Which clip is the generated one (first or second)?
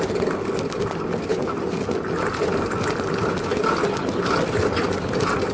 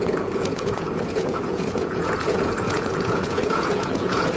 second